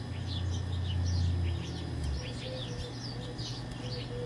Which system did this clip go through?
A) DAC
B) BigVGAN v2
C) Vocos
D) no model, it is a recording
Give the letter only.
D